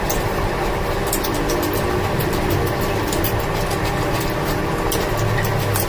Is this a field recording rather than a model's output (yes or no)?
yes